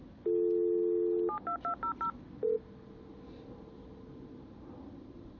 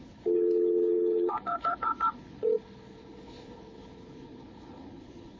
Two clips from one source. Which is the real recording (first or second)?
first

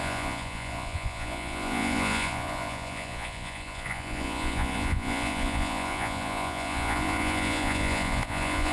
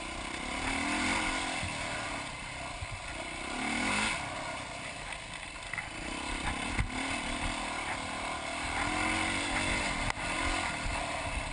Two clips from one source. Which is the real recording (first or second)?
second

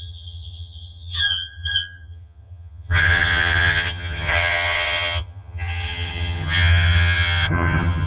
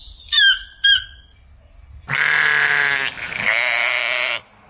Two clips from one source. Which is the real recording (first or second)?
second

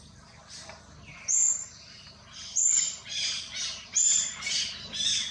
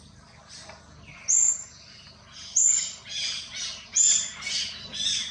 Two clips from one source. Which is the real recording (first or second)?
second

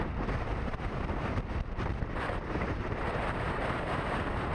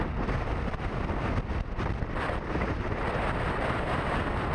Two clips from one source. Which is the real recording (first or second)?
second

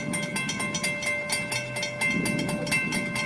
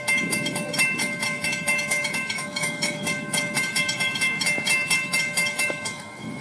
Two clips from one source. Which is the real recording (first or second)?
first